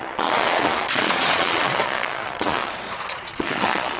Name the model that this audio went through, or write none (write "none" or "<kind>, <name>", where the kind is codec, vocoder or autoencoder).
vocoder, Vocos